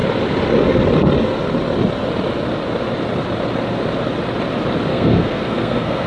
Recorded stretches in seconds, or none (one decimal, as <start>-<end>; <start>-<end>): 0.0-4.9